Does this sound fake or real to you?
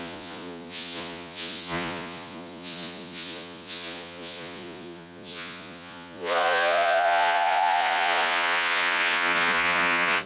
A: fake